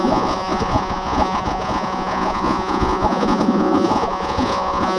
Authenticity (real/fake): fake